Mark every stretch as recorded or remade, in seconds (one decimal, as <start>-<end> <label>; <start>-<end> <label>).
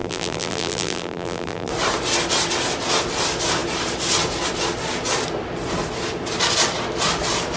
0.0-1.7 remade; 1.7-7.6 recorded